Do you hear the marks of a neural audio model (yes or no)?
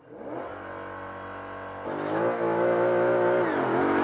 no